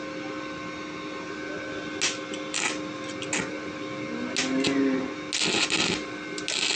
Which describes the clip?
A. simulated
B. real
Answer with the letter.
B